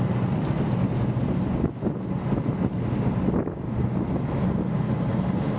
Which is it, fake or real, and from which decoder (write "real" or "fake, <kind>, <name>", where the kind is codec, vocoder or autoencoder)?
real